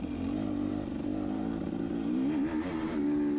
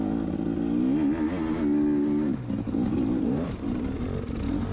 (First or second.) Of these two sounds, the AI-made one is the first